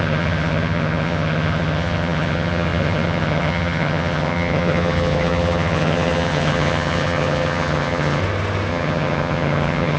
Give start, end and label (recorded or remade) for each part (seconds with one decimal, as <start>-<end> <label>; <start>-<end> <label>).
0.0-8.2 remade; 8.2-8.7 recorded; 8.7-10.0 remade